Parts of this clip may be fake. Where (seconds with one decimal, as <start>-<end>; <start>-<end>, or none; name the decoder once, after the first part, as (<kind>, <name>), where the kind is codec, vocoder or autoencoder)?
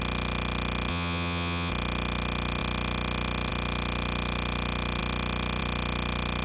0.9-1.7 (vocoder, HiFi-GAN)